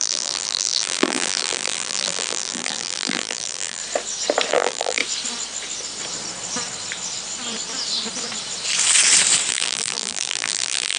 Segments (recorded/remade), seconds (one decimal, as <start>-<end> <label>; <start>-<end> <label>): 0.0-3.8 remade; 3.8-4.5 recorded; 4.5-5.0 remade; 5.0-9.5 recorded; 9.5-11.0 remade